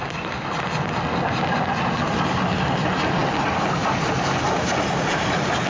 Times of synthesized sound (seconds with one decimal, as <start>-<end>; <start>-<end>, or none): none